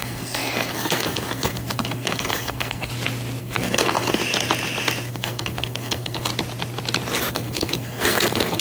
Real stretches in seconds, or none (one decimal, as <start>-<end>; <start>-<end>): 2.9-3.4; 4.2-5.1; 6.3-7.3